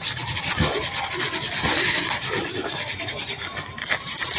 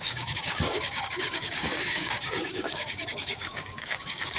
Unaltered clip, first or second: first